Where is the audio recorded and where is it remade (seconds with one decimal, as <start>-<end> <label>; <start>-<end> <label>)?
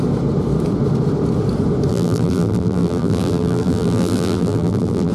0.0-1.9 recorded; 1.9-5.1 remade